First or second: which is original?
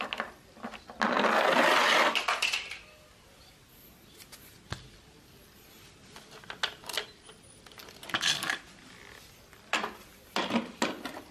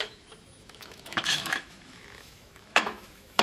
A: first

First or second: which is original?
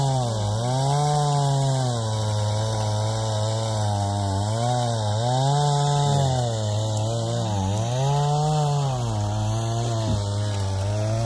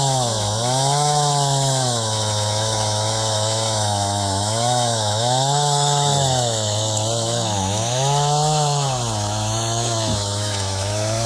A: first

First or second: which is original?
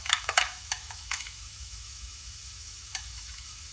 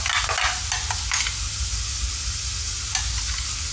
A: second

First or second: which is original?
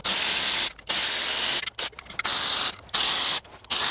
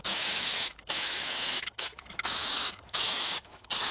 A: first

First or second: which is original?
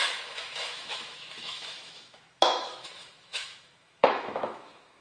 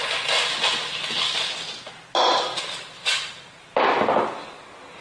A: second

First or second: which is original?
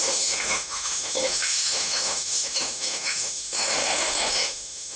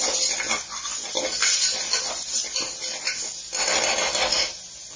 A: second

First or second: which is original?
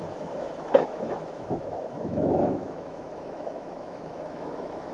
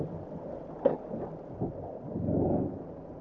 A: second